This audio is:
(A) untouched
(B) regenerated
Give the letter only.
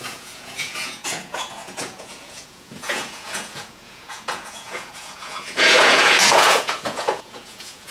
B